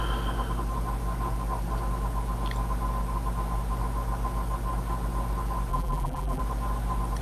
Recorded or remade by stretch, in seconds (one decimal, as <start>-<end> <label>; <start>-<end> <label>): 0.0-5.7 recorded; 5.7-6.4 remade; 6.4-7.2 recorded